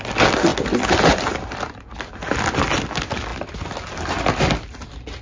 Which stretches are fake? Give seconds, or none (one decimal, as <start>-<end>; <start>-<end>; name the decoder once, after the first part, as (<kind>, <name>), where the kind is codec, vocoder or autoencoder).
none